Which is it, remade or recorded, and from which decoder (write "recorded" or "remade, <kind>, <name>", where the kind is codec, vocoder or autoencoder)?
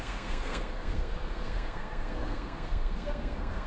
remade, codec, SNAC